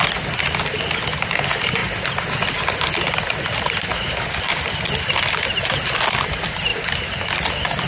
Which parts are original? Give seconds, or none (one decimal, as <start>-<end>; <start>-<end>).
0.0-7.9